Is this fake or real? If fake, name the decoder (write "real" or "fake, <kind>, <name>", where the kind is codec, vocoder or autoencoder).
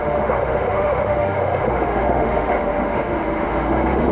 fake, autoencoder, DAC-VAE